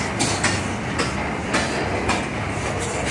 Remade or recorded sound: recorded